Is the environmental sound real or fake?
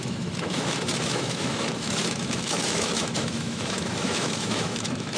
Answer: fake